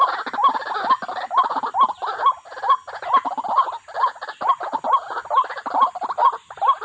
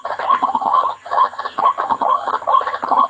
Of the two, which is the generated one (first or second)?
second